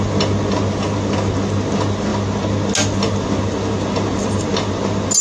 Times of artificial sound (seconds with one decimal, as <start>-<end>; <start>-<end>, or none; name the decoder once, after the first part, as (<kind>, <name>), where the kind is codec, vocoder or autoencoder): none